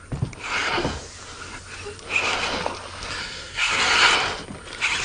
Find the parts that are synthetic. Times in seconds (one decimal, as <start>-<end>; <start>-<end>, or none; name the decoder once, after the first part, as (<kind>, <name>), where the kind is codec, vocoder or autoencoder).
3.2-3.8 (codec, SNAC)